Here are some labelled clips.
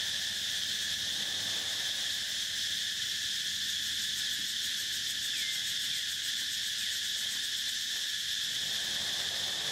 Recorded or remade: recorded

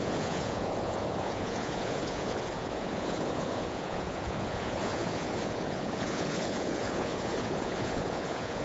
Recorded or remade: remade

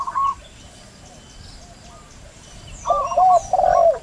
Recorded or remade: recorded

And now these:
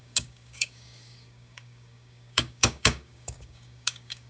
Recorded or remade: remade